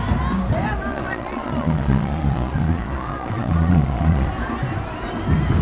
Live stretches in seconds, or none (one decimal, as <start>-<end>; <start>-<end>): 0.0-0.9; 4.3-5.6